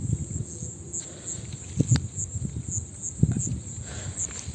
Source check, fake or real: real